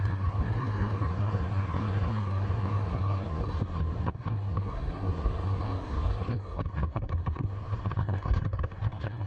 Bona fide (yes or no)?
no